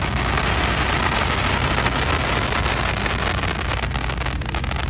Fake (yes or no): no